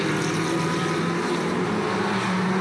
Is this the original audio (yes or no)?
no